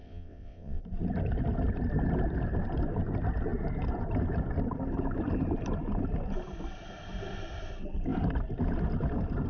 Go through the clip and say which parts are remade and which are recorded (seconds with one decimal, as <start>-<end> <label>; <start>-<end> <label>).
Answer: 0.0-0.8 remade; 0.8-9.5 recorded